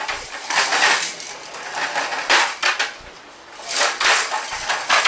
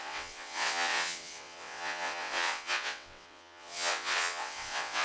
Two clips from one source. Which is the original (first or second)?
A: first